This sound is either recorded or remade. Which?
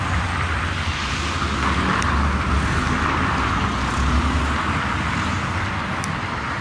recorded